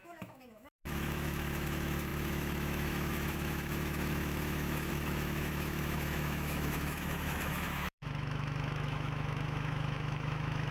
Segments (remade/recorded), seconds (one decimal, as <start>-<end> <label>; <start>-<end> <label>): 0.0-10.7 remade